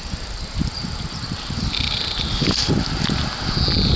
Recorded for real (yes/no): yes